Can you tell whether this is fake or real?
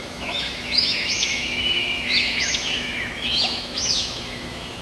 fake